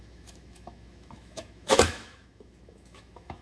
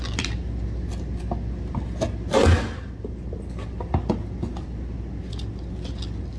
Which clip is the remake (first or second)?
first